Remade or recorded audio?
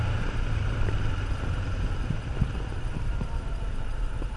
remade